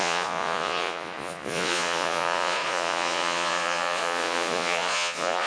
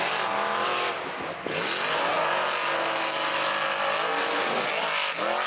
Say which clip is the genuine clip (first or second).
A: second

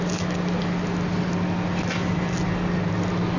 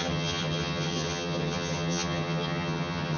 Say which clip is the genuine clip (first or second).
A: first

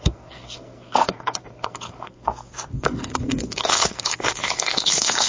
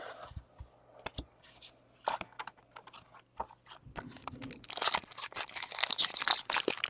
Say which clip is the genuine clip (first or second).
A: second